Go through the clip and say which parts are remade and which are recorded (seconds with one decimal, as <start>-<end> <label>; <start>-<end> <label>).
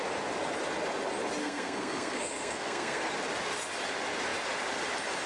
0.0-1.4 recorded; 1.4-3.1 remade; 3.1-5.3 recorded